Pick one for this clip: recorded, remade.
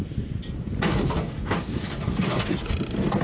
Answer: recorded